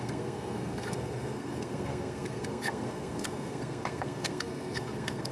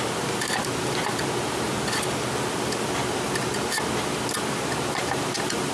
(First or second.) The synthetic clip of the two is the first